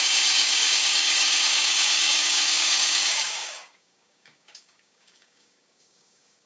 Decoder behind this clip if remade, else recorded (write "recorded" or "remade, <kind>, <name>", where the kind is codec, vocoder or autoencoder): remade, codec, DAC